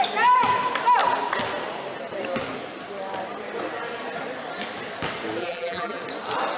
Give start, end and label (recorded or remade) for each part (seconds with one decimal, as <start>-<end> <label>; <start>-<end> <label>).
0.0-5.4 recorded; 5.4-6.0 remade; 6.0-6.6 recorded